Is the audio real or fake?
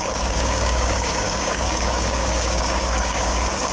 fake